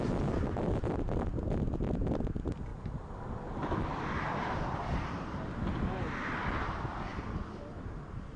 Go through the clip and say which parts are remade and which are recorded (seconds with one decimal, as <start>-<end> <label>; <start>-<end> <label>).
0.0-2.7 recorded; 2.7-6.1 remade; 6.1-7.1 recorded; 7.1-8.4 remade